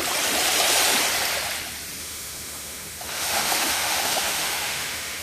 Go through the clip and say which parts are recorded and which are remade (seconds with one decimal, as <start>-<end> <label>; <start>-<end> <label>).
0.0-2.0 recorded; 2.0-5.2 remade